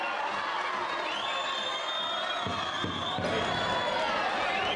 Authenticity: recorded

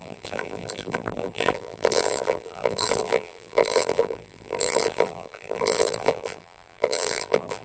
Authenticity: remade